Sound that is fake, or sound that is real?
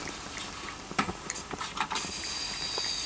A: real